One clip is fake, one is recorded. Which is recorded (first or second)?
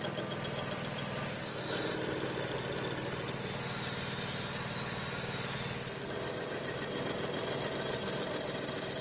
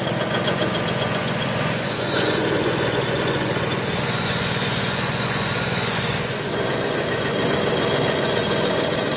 first